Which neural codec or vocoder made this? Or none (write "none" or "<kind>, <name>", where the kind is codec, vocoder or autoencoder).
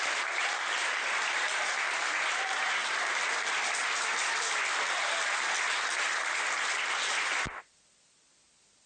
none